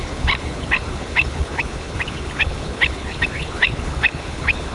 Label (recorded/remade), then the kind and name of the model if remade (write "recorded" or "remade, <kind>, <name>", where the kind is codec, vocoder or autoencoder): remade, codec, HILCodec